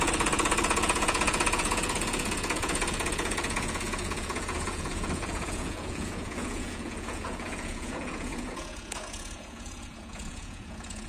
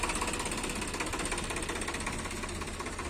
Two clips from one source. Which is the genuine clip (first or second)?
second